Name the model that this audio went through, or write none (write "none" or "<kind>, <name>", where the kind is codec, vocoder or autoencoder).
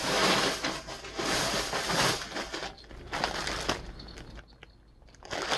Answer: none